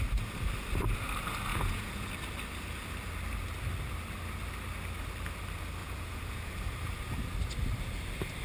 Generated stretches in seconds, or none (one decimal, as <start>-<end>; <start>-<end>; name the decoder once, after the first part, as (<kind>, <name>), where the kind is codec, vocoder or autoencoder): 1.5-2.1 (vocoder, Vocos); 5.8-6.5